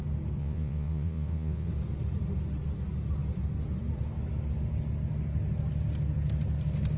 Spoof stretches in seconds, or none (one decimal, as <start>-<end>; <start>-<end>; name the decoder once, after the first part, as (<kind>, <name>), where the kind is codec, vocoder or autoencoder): 0.4-1.7 (vocoder, Vocos)